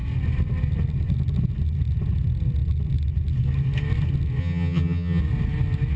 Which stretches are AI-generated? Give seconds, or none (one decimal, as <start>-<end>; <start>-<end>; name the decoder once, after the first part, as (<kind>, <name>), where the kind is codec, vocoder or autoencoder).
4.4-5.2 (vocoder, HiFi-GAN)